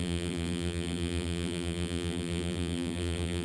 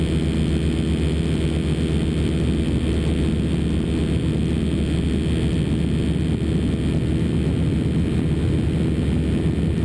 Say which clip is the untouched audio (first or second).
second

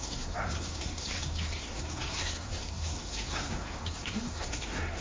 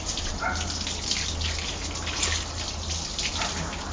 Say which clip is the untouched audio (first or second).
second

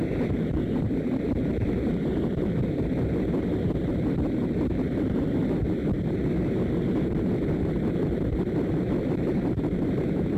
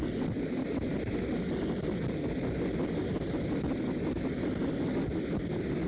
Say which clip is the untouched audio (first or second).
second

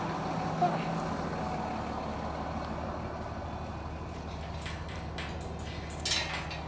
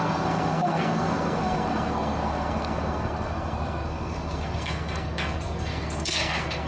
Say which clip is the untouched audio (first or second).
first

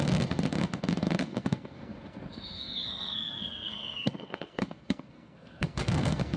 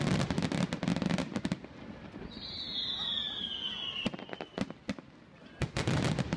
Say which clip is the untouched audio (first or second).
second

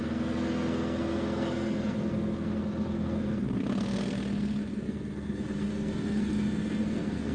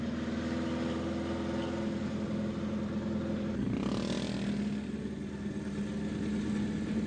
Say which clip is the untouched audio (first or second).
second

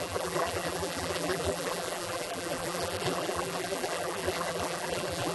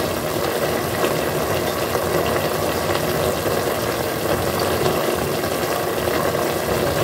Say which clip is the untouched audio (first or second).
second